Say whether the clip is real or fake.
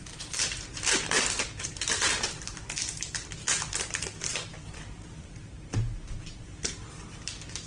fake